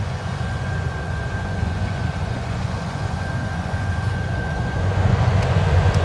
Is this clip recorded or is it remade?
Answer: remade